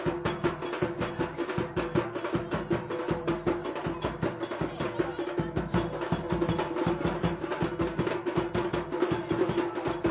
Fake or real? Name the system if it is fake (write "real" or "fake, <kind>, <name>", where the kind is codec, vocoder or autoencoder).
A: real